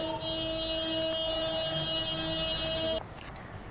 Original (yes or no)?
yes